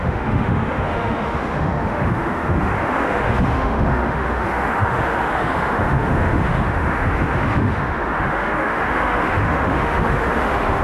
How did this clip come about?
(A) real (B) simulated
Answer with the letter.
B